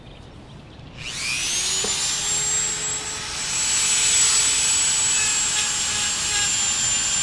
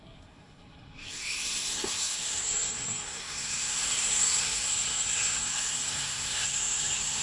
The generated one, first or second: second